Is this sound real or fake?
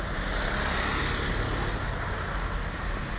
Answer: real